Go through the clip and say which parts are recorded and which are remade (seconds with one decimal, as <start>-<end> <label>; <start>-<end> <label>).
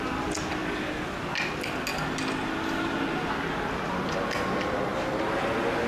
0.0-5.9 recorded